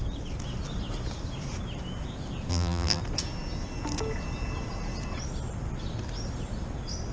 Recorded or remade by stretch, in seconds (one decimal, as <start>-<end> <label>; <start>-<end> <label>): 0.0-2.5 recorded; 2.5-3.0 remade; 3.0-7.1 recorded